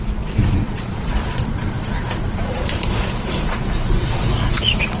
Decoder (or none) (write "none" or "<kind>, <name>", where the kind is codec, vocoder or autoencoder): vocoder, Vocos